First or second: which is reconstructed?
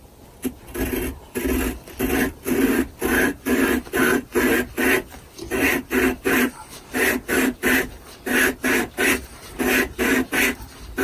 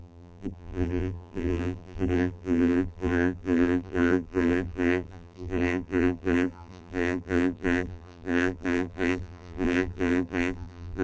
second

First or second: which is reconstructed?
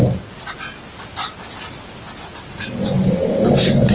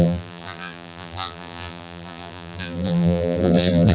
second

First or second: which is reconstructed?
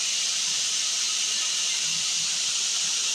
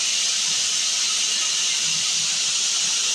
first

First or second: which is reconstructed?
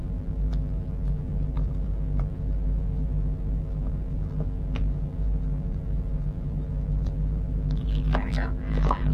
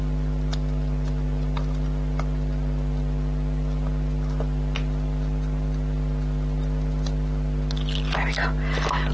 first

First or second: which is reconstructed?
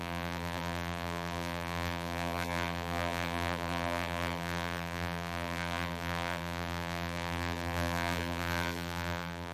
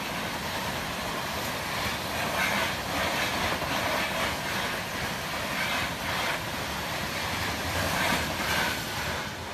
first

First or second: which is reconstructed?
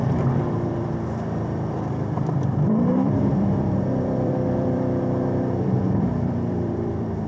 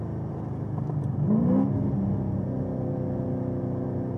first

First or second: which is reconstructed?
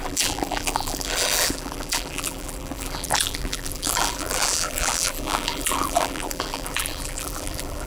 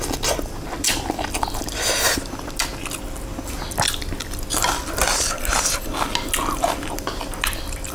first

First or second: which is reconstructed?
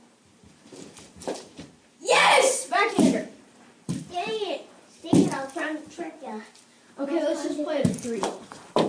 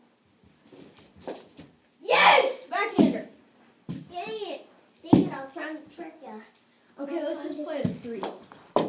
first